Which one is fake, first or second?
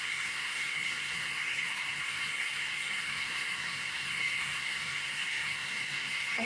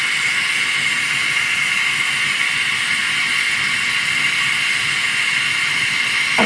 first